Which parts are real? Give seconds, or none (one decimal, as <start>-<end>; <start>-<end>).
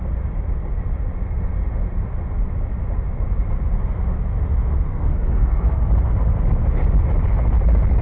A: 0.0-4.9; 5.9-8.0